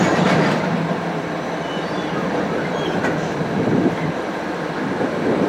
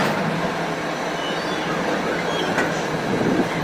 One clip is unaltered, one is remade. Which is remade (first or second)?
first